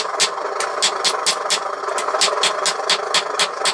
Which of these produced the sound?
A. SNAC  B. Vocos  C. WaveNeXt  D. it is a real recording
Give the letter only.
D